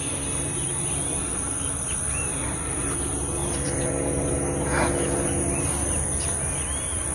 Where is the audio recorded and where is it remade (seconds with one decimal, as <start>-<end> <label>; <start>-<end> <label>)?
0.0-1.3 recorded; 1.3-2.8 remade; 2.8-7.1 recorded